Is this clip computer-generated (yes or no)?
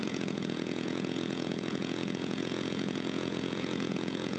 yes